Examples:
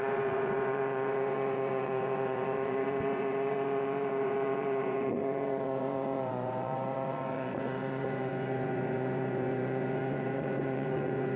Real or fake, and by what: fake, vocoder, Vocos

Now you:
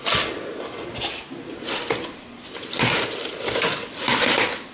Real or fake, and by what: real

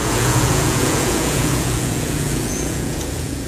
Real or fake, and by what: fake, vocoder, Vocos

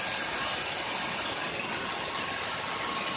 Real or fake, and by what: real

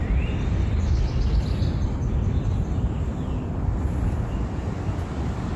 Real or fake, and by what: real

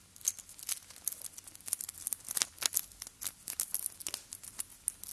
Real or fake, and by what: real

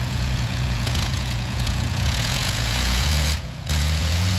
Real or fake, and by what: fake, vocoder, Vocos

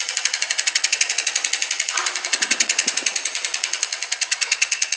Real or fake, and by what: fake, vocoder, Vocos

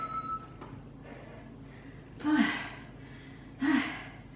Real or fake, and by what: real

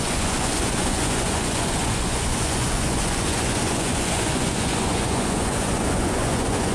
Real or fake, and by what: fake, vocoder, Vocos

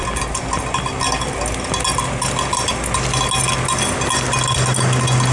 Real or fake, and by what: real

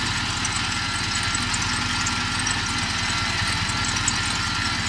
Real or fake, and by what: real